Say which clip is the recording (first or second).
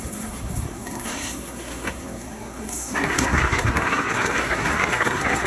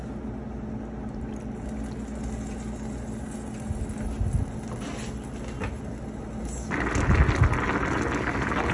second